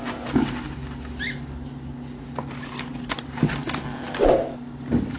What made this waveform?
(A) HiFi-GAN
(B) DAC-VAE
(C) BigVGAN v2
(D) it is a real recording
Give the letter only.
D